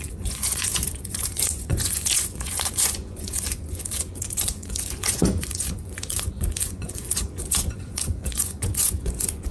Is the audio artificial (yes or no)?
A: yes